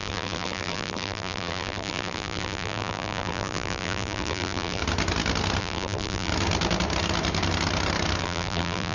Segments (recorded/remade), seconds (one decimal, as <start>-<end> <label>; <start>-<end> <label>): 0.0-4.8 remade; 4.8-5.6 recorded; 5.6-6.3 remade; 6.3-8.2 recorded; 8.2-8.9 remade